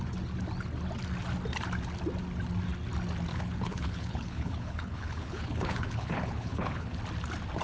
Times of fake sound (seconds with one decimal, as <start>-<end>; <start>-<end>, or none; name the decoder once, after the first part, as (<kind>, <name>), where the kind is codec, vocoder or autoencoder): 3.3-7.0 (codec, HILCodec)